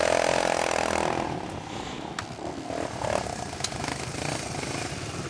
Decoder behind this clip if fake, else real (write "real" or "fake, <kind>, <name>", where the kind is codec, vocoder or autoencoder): real